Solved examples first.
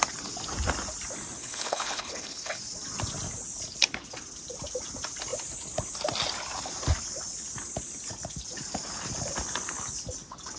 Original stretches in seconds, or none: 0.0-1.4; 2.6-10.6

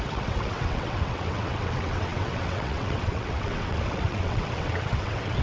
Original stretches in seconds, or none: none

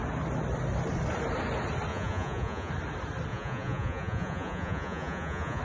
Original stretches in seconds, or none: 0.0-1.9; 2.7-3.3